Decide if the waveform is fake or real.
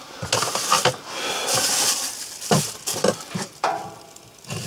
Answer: real